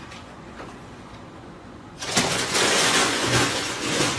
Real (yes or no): no